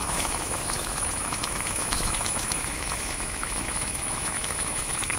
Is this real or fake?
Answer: fake